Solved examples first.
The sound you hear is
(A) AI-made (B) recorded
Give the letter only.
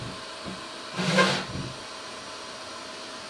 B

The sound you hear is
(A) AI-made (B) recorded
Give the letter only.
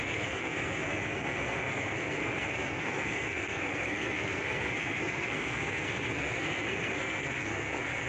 A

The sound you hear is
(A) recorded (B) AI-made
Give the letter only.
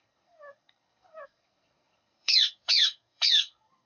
B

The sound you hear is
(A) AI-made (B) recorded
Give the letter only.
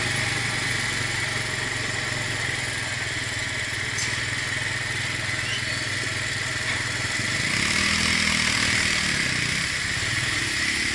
B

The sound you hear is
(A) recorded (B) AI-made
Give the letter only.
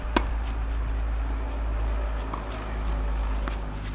A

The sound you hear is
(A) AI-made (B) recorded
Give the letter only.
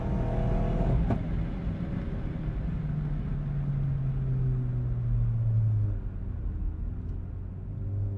B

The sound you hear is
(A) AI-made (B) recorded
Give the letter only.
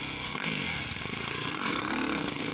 A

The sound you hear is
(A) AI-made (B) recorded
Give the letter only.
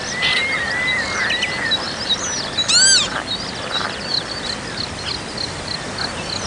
B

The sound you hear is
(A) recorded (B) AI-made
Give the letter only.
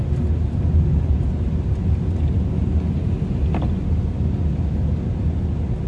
A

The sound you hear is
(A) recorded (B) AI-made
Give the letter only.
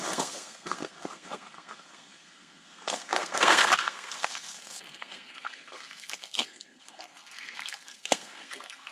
B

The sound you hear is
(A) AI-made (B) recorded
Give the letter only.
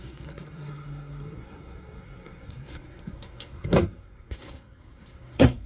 A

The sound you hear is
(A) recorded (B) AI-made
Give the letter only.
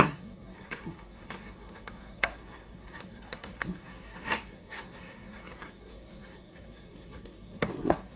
B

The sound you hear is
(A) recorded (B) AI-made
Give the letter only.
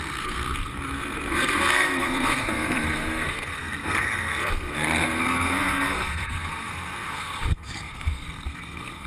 B